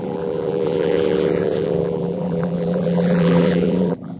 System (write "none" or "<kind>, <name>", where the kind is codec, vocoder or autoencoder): vocoder, BigVGAN v2